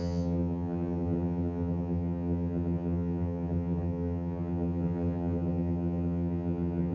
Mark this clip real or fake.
fake